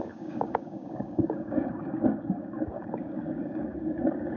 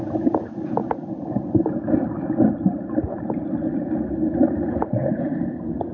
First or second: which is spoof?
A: first